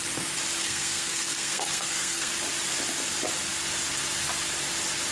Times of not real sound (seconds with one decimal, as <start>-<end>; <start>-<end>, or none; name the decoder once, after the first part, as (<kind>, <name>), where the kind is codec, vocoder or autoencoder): 0.6-2.3 (codec, SNAC)